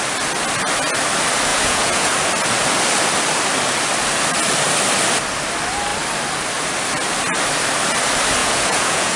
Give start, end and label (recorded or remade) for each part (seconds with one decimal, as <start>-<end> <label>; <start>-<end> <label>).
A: 0.0-1.5 recorded; 1.5-2.1 remade; 2.1-8.4 recorded; 8.4-9.2 remade